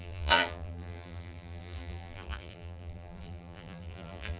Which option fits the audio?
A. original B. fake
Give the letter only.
B